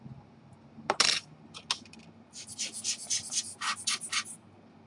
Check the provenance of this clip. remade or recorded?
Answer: recorded